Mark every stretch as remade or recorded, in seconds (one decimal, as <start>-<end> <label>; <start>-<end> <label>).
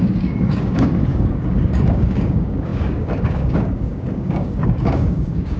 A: 0.0-5.6 remade